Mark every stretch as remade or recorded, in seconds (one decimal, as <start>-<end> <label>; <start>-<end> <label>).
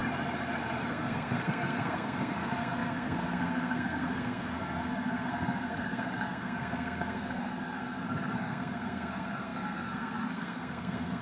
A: 0.0-0.9 recorded; 0.9-11.2 remade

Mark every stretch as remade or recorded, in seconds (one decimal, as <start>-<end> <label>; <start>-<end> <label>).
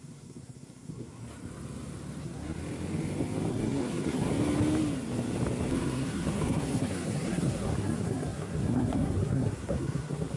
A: 0.0-1.2 remade; 1.2-2.2 recorded; 2.2-2.6 remade; 2.6-3.5 recorded; 3.5-4.3 remade; 4.3-5.7 recorded; 5.7-10.4 remade